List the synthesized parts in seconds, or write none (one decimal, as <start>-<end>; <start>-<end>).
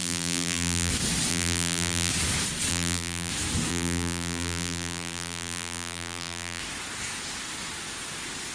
0.0-0.9; 1.3-2.1; 2.7-3.3; 3.7-6.6